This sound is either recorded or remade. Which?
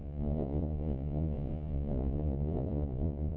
remade